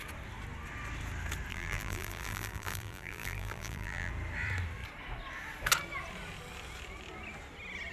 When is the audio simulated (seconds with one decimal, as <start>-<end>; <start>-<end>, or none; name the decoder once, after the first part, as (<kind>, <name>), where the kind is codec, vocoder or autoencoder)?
1.5-4.1 (vocoder, BigVGAN v2)